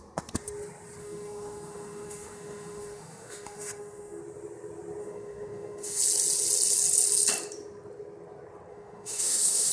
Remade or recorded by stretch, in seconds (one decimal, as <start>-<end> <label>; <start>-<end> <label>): 0.0-1.0 recorded; 1.0-4.2 remade; 4.2-5.0 recorded; 5.0-6.0 remade; 6.0-8.7 recorded; 8.7-9.7 remade